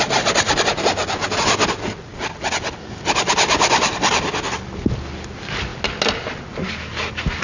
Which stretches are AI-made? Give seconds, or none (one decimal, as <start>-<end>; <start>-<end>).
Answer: none